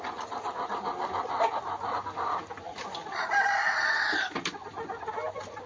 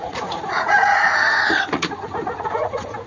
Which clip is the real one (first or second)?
first